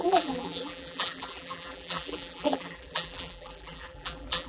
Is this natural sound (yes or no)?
no